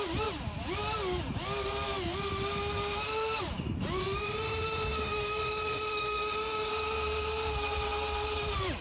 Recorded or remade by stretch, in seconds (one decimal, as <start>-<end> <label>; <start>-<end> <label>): 0.0-4.0 recorded; 4.0-6.7 remade; 6.7-8.8 recorded